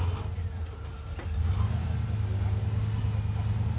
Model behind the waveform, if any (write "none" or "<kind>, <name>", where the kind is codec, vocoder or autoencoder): none